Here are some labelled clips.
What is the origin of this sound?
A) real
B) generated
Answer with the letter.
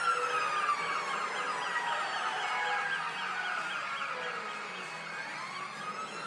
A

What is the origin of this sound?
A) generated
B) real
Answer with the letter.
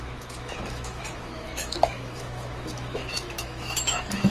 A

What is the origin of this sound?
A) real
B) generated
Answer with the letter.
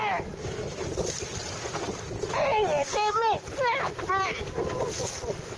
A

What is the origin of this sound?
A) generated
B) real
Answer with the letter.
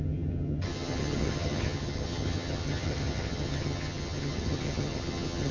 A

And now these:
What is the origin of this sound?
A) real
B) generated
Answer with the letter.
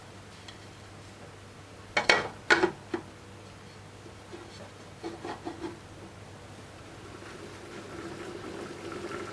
A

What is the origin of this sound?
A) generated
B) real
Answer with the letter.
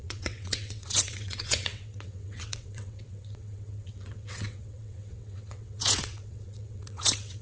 A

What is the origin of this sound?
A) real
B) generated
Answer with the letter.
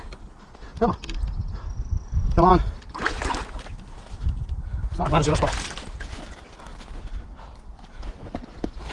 A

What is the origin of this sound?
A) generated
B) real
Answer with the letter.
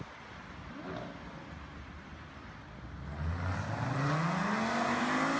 B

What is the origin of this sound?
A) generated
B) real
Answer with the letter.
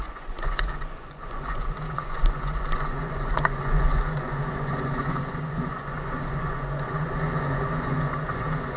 A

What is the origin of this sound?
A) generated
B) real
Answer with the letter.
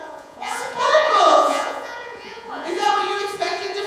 A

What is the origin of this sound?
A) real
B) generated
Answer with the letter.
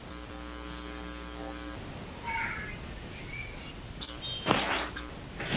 A